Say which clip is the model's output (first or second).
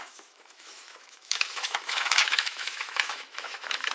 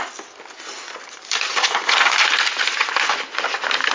first